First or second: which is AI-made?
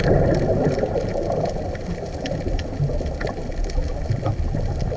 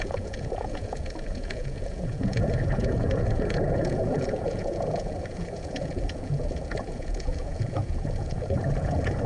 second